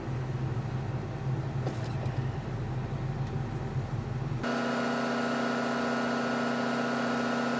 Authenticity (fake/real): real